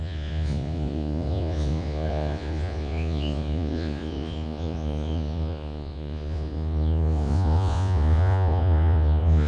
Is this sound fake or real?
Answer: fake